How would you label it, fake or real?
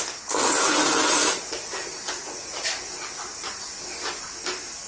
real